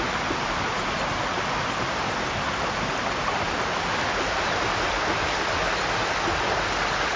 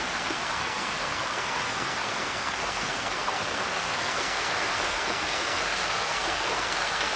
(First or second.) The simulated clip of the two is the second